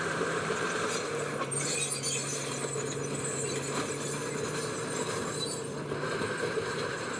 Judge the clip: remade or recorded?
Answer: recorded